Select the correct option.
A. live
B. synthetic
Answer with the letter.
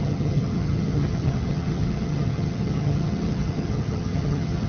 B